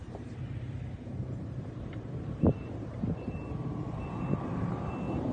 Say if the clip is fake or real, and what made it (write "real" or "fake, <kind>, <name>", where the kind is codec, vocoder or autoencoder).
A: fake, vocoder, BigVGAN v2